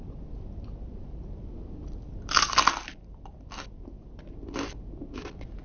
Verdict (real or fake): real